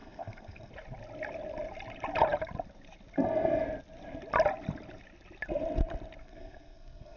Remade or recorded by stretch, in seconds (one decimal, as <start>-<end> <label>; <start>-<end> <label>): 0.0-0.7 remade; 0.7-6.2 recorded; 6.2-7.2 remade